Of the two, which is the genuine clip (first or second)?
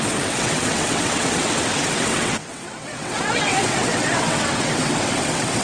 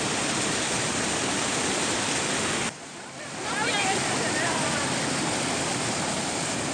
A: second